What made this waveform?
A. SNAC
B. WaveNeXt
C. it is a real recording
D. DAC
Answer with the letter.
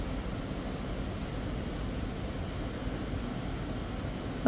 C